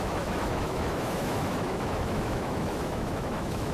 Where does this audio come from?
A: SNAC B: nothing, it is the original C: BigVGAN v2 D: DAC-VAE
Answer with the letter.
D